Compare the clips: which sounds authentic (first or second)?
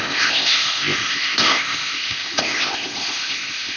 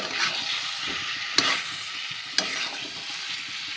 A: second